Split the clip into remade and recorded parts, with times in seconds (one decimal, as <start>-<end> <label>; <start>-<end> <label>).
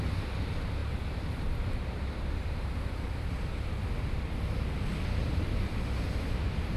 0.0-0.8 recorded; 0.8-3.9 remade; 3.9-4.9 recorded; 4.9-5.7 remade; 5.7-6.8 recorded